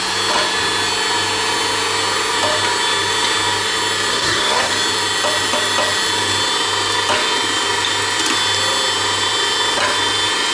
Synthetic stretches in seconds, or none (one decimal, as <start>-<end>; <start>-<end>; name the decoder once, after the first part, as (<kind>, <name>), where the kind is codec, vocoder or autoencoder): 4.1-4.7 (codec, SNAC)